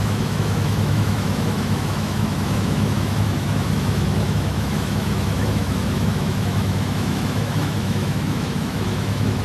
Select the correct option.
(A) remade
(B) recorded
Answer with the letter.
A